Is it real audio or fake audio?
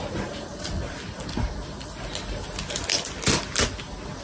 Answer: real